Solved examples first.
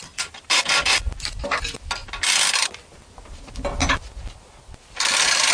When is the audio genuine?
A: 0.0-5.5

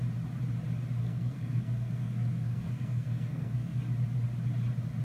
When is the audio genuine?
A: 0.0-1.0; 3.8-5.0

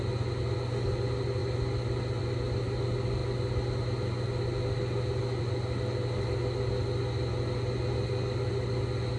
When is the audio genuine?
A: 0.0-9.2

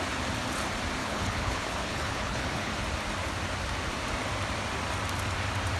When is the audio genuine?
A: 0.0-1.0; 2.7-5.8

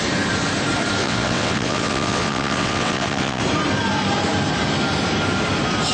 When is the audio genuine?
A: 0.0-1.0; 3.4-5.9

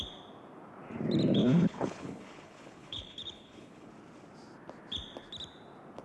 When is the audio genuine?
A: 0.0-1.4; 3.9-6.0

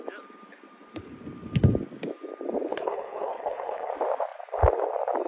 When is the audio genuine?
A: 0.0-2.7; 3.9-5.3

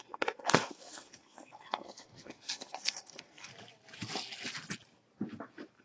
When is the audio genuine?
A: 3.5-5.8